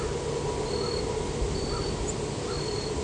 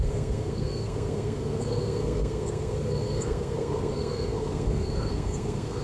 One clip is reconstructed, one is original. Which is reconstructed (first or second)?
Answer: second